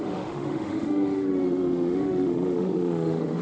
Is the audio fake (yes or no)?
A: yes